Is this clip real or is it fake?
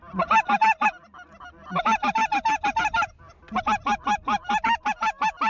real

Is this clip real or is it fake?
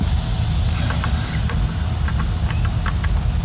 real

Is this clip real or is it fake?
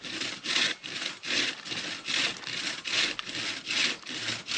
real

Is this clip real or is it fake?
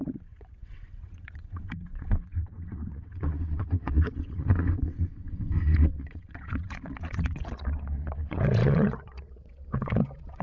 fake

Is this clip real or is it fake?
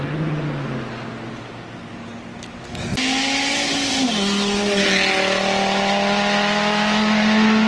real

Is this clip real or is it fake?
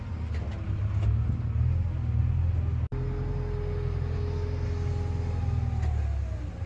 real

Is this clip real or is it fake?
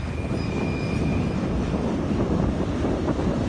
real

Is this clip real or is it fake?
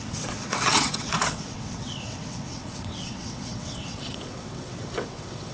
fake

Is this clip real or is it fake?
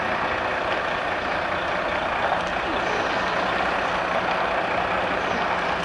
real